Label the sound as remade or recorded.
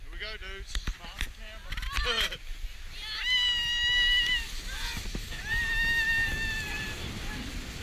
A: recorded